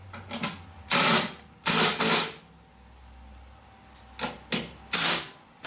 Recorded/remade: recorded